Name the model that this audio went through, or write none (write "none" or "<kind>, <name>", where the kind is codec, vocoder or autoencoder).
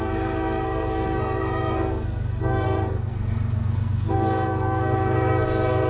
codec, SNAC